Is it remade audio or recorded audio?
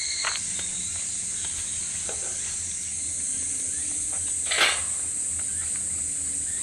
recorded